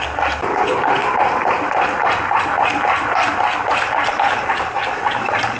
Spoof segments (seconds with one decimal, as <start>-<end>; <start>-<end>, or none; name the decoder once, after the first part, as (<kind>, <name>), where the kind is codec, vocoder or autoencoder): none